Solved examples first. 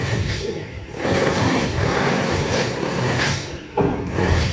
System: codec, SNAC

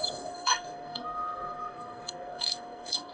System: codec, SNAC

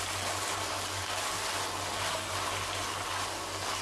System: none